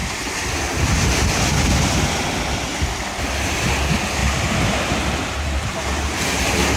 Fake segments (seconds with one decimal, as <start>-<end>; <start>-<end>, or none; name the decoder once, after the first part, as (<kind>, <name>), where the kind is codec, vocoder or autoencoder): 0.0-0.5 (vocoder, BigVGAN v2); 4.2-6.3